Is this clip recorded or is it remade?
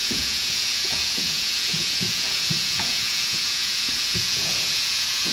remade